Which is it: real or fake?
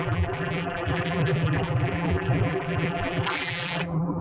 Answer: fake